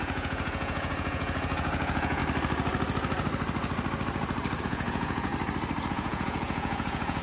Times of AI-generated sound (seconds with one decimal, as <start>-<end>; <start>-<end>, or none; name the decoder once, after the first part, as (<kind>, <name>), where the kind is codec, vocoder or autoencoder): 0.0-2.2 (vocoder, Vocos); 4.6-5.3; 5.9-7.2